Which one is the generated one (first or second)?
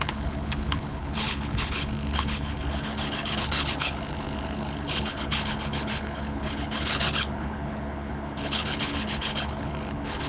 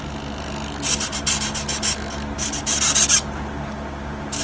first